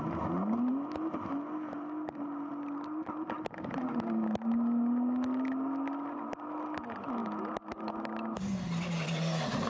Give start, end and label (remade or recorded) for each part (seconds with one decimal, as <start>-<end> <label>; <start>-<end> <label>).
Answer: 0.0-9.7 recorded